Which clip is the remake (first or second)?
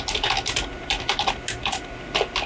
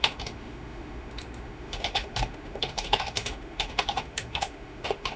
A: second